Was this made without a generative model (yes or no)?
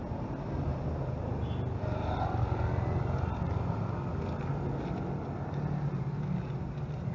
yes